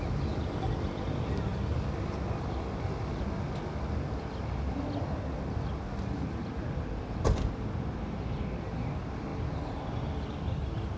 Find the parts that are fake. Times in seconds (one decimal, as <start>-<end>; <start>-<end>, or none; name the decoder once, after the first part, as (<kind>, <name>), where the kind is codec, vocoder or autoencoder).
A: none